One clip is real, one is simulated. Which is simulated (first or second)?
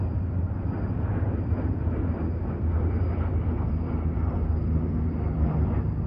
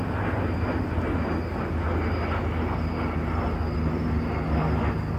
first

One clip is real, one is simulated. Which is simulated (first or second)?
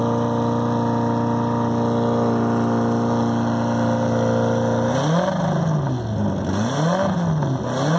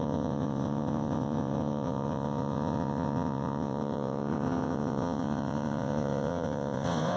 second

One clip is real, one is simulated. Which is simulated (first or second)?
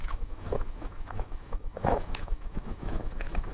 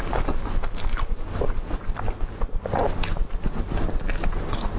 first